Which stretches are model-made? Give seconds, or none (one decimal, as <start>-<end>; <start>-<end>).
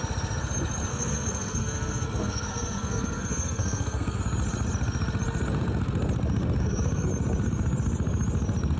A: 0.9-4.2; 6.6-7.1